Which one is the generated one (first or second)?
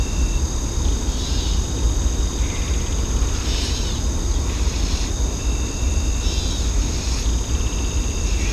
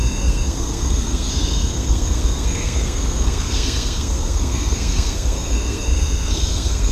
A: second